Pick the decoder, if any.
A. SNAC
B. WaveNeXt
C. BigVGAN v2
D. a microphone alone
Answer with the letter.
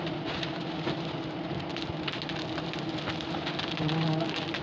D